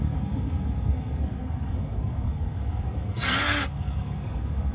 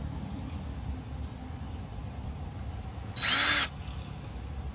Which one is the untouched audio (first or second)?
second